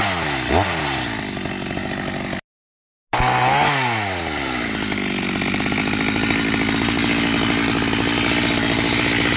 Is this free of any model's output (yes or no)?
yes